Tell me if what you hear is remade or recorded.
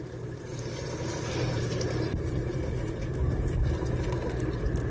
remade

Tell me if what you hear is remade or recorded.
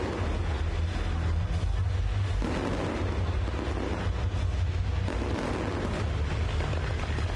recorded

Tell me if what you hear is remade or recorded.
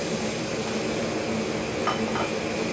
recorded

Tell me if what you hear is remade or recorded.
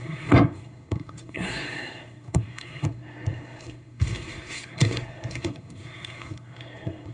remade